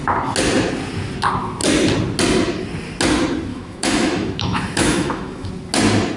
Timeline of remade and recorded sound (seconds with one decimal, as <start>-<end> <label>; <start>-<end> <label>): 0.0-3.5 recorded; 3.5-5.5 remade; 5.5-6.2 recorded